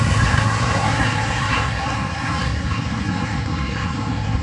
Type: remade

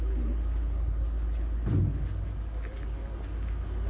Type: recorded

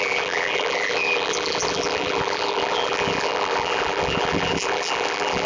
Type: remade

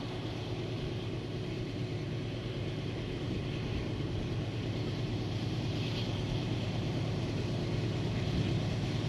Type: remade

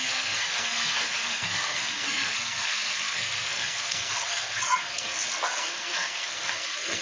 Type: remade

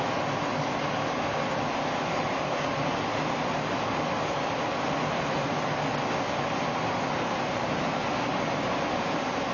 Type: recorded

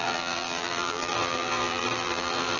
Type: remade